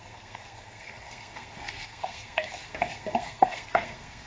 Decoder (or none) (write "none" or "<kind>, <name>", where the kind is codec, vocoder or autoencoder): codec, SNAC